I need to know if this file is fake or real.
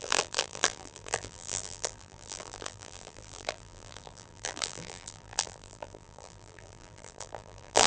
fake